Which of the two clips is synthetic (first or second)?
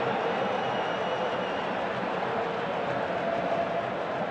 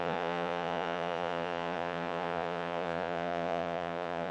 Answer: second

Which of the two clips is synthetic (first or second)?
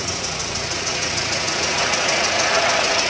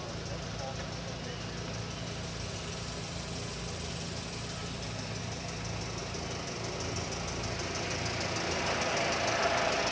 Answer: first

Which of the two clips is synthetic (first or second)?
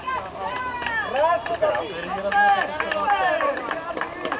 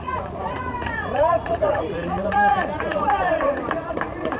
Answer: second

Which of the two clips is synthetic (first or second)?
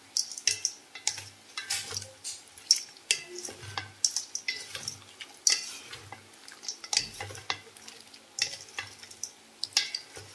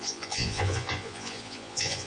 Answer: second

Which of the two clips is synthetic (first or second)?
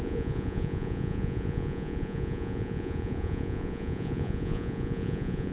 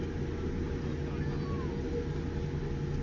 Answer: first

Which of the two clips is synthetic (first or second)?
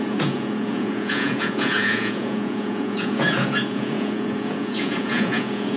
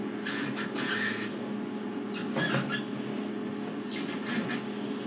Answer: first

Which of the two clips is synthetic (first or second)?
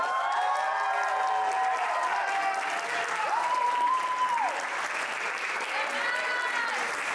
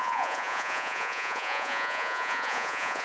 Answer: second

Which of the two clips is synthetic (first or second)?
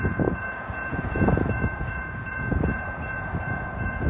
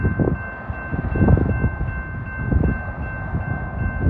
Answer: first